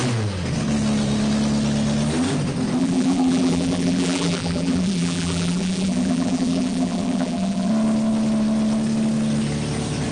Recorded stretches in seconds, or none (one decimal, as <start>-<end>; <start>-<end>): 0.0-2.8; 7.7-10.1